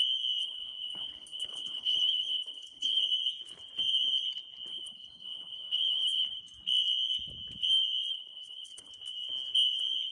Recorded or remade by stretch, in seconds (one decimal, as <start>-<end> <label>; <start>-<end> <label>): 0.0-0.4 recorded; 0.4-3.0 remade; 3.0-4.7 recorded; 4.7-6.4 remade; 6.4-8.1 recorded; 8.1-8.9 remade; 8.9-10.1 recorded